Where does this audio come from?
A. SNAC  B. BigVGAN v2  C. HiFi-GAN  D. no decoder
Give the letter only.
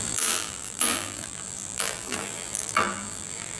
B